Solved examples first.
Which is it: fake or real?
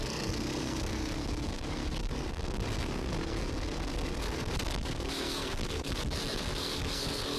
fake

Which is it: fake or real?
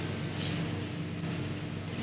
real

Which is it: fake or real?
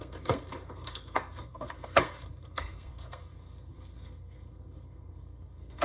fake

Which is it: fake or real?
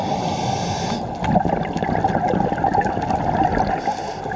real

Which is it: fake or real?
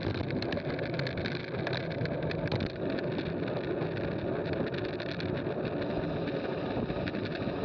real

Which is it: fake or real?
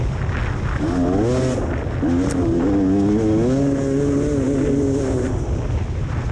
real